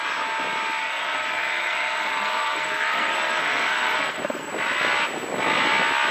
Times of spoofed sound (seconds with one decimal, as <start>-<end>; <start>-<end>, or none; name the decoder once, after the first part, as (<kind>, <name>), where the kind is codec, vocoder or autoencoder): 0.8-4.5 (codec, SNAC)